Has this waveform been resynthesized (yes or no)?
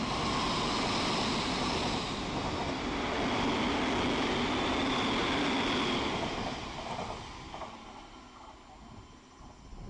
no